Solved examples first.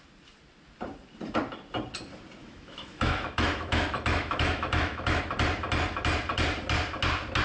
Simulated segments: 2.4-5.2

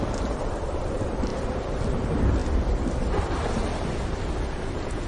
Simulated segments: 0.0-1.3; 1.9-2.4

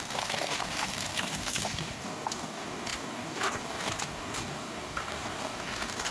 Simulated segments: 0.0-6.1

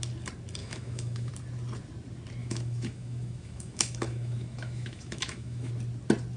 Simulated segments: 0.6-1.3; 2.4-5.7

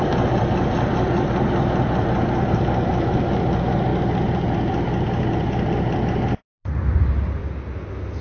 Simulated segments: 0.0-8.2

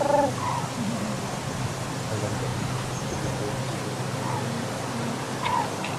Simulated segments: none